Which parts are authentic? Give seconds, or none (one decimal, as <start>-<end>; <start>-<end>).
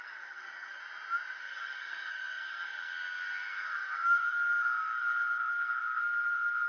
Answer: 0.8-1.4